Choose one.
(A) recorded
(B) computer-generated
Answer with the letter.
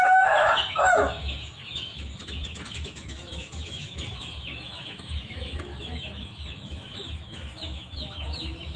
B